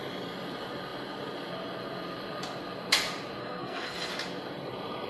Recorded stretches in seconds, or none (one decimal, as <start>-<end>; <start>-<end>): 0.0-3.4; 4.1-5.1